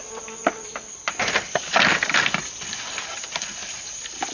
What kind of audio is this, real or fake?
real